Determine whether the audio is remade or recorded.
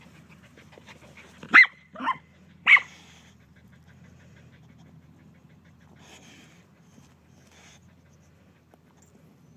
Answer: remade